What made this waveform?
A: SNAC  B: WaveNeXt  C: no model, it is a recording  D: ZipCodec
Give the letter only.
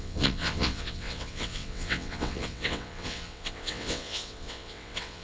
B